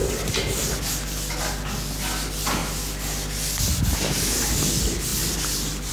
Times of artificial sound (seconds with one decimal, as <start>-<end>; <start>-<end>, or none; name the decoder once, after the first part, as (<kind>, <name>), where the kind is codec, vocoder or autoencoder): none